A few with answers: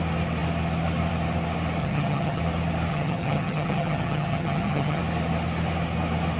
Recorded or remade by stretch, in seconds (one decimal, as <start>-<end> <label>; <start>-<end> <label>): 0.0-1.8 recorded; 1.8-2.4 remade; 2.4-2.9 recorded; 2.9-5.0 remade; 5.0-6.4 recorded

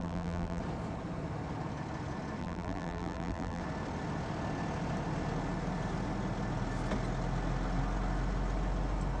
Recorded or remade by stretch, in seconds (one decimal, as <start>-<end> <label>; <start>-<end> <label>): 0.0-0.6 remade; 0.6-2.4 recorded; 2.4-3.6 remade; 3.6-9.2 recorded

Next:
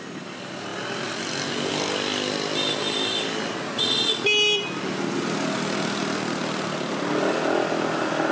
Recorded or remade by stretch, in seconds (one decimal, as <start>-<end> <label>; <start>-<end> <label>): 0.0-8.3 recorded

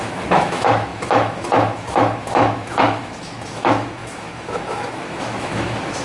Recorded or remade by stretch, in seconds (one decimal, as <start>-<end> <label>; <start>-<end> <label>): 0.0-6.0 remade